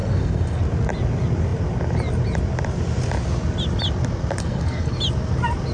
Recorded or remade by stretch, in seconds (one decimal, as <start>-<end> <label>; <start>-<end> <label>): 0.0-0.6 remade; 0.6-4.4 recorded; 4.4-4.9 remade; 4.9-5.7 recorded